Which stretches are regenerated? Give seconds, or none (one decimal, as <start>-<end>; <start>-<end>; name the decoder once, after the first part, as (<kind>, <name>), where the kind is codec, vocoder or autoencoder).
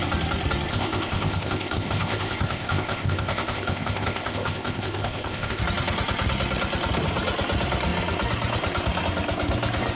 0.7-5.6 (codec, ZipCodec)